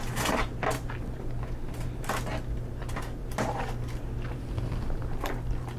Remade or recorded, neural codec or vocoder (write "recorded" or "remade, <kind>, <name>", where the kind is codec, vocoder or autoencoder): recorded